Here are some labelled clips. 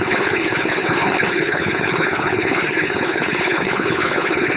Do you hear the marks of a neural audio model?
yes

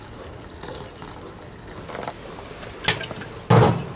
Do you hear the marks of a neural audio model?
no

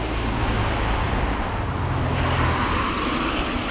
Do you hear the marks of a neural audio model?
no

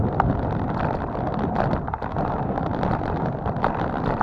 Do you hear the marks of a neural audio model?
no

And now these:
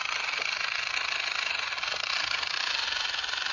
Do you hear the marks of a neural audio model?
no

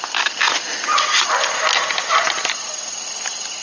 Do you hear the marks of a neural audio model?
no